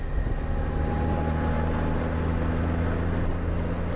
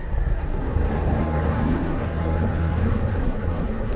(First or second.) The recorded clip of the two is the first